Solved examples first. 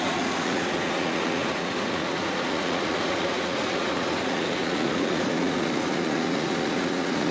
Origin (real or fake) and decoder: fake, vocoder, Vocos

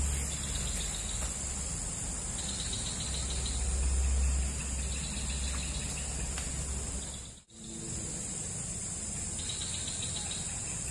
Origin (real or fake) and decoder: real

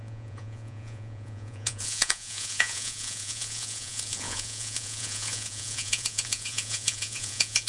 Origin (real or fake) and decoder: fake, vocoder, Vocos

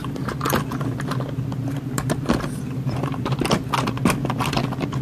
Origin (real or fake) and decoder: real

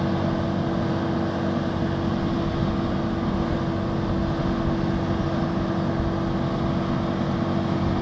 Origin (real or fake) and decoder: real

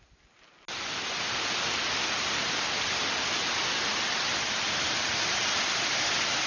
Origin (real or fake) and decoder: real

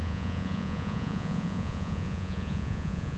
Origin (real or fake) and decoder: fake, vocoder, Vocos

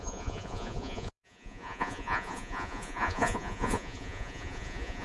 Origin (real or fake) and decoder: fake, vocoder, Vocos